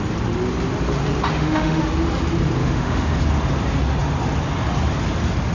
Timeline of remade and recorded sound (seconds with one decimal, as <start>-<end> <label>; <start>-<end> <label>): 0.0-1.3 recorded; 1.3-1.8 remade; 1.8-2.6 recorded; 2.6-3.2 remade; 3.2-5.5 recorded